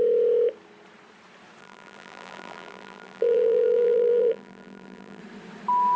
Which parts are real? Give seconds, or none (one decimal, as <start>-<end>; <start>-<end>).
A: 0.0-1.6; 5.2-6.0

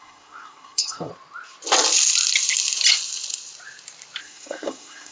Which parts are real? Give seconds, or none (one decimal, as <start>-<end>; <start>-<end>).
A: 1.1-4.2

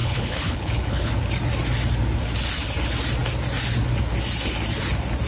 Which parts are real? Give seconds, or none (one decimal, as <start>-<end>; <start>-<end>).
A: 1.1-5.3

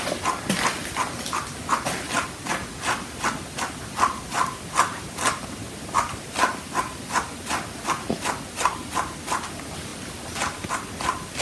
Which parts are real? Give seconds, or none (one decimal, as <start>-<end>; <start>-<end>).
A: 0.0-11.4